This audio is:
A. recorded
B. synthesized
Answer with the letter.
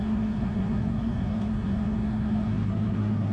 B